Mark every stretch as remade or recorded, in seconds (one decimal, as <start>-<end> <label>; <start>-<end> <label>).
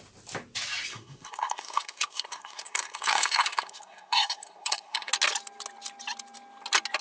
0.0-0.9 recorded; 0.9-5.1 remade; 5.1-7.0 recorded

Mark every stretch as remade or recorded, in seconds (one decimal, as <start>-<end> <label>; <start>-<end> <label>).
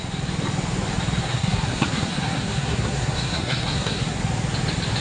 0.0-1.2 recorded; 1.2-4.2 remade; 4.2-5.0 recorded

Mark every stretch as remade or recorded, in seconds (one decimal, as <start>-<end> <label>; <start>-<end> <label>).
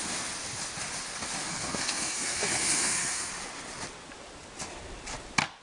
0.0-1.5 recorded; 1.5-3.3 remade; 3.3-5.6 recorded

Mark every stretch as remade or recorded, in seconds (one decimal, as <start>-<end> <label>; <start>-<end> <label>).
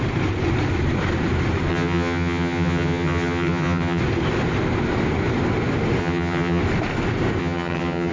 0.0-1.7 recorded; 1.7-4.0 remade; 4.0-6.0 recorded; 6.0-6.6 remade; 6.6-7.4 recorded; 7.4-8.1 remade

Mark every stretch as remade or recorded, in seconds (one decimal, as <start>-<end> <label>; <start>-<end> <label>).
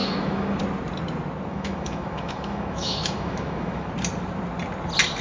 0.0-0.6 remade; 0.6-1.5 recorded; 1.5-3.9 remade; 3.9-5.2 recorded